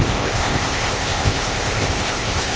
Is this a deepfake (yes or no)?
yes